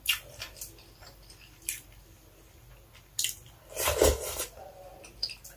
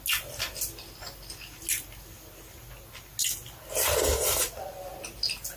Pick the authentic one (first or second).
second